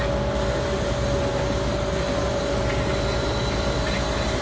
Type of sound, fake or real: real